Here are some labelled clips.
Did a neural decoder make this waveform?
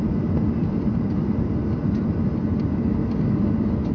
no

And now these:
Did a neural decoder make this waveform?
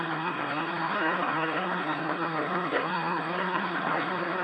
yes